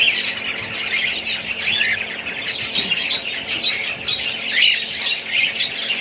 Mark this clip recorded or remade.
recorded